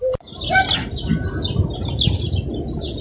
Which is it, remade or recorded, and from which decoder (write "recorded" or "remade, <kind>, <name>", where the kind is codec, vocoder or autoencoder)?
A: recorded